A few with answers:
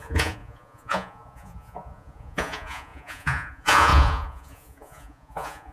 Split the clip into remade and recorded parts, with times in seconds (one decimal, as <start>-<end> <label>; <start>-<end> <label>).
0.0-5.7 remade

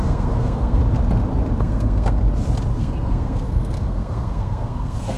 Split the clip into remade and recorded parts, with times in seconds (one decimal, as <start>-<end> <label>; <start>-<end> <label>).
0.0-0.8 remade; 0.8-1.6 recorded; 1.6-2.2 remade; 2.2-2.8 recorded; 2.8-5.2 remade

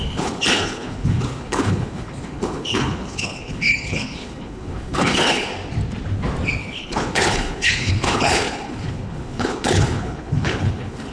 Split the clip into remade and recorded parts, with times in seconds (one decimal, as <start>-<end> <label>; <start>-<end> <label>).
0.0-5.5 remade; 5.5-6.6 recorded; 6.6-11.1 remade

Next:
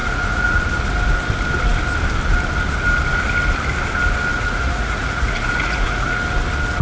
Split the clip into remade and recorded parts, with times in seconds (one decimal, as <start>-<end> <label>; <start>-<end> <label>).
0.0-0.6 remade; 0.6-4.3 recorded; 4.3-6.2 remade; 6.2-6.8 recorded

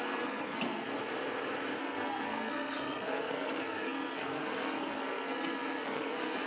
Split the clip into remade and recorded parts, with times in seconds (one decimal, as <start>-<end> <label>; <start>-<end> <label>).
0.0-0.9 remade; 0.9-1.8 recorded; 1.8-6.5 remade

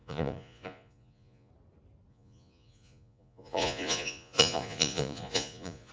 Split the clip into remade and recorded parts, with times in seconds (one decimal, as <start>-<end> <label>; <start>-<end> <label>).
0.0-1.5 remade; 1.5-2.1 recorded; 2.1-5.9 remade

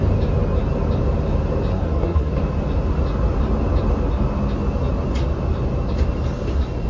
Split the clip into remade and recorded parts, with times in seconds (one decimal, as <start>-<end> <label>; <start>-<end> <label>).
0.0-1.7 recorded; 1.7-2.4 remade; 2.4-6.9 recorded